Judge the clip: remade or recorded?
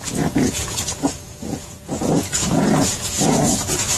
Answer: remade